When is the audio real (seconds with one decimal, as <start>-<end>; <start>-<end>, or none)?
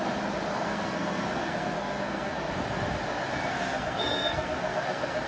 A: 0.0-0.5; 2.5-3.5